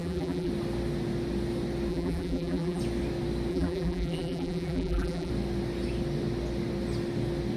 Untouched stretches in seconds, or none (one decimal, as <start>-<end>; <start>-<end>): 0.5-1.9; 2.8-3.5; 5.3-7.6